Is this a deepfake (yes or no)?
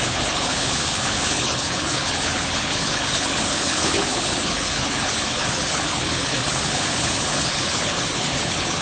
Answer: yes